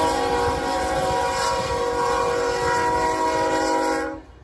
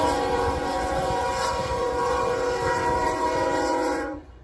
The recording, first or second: first